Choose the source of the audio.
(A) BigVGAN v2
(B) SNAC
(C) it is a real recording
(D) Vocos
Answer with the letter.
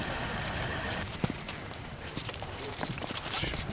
A